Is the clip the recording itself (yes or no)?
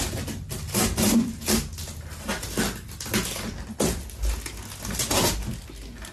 yes